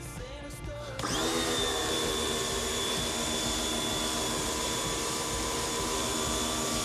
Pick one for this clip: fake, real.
fake